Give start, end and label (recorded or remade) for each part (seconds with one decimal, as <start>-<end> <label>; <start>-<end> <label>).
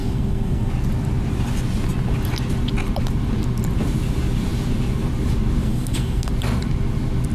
0.0-0.7 remade; 0.7-5.6 recorded; 5.6-6.3 remade; 6.3-7.3 recorded